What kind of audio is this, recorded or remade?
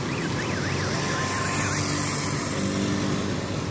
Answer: recorded